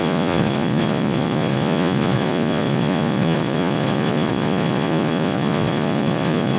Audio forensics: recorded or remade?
remade